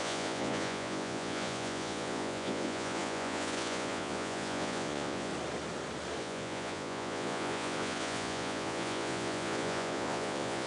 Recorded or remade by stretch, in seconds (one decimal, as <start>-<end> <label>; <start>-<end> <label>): 0.0-5.3 remade; 5.3-6.2 recorded; 6.2-10.7 remade